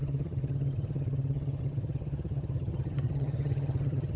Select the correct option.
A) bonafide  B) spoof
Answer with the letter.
B